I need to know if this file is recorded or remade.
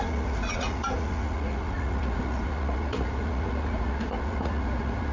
remade